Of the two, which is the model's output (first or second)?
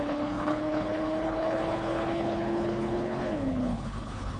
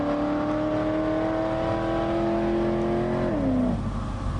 first